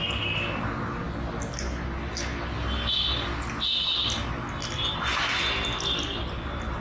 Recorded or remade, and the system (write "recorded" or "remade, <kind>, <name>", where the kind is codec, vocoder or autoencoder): recorded